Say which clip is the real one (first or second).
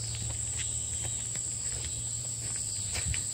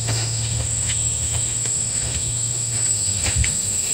first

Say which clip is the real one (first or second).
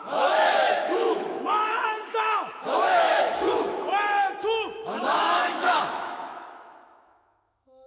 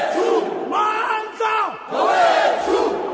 second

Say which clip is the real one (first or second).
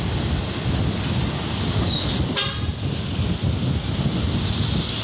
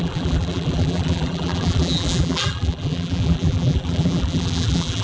first